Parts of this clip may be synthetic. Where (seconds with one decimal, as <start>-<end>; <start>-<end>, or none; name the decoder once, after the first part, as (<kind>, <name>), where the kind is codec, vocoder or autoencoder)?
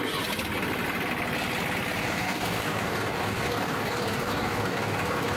2.0-5.4 (codec, DAC)